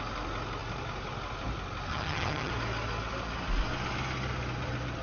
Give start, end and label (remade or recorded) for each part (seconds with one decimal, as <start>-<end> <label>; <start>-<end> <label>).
0.0-1.9 recorded; 1.9-2.5 remade; 2.5-5.0 recorded